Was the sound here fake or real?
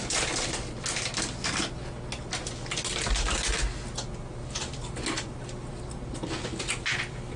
real